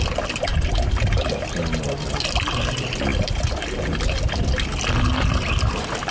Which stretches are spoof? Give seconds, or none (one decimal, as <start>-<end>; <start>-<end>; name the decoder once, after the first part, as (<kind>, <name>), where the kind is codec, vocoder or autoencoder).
none